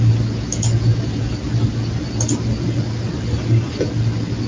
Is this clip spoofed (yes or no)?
no